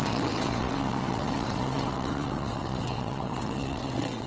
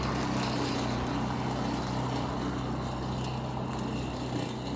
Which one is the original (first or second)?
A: second